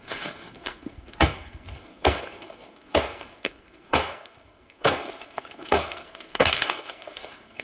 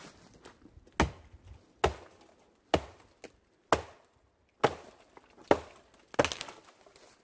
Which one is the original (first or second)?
second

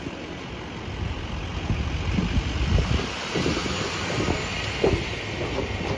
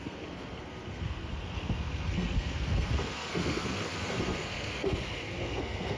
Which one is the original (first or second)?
first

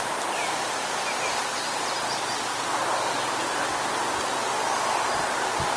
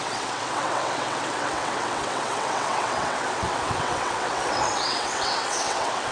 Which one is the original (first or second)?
first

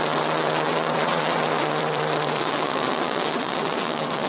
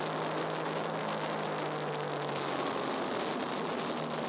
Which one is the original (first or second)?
second